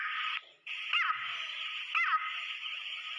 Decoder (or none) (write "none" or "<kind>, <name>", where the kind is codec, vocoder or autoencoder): none